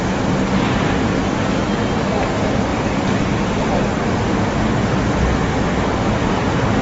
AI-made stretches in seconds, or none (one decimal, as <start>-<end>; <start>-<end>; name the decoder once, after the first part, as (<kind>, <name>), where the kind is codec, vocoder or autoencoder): none